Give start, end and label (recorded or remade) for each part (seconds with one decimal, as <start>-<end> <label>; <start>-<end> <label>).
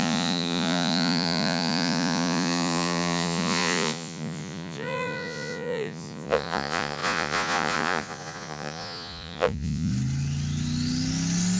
0.0-9.9 remade; 9.9-11.6 recorded